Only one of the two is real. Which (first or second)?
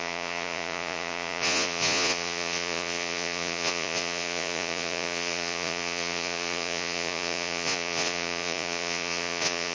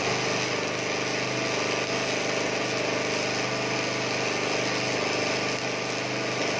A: second